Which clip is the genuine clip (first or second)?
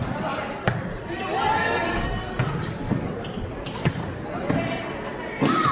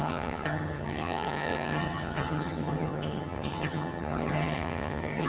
first